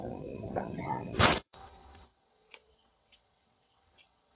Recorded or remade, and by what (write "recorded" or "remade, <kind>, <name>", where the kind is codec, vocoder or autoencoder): remade, vocoder, WaveNeXt